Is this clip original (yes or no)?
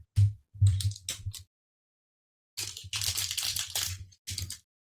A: yes